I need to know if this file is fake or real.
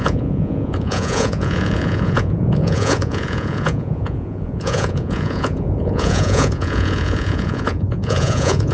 fake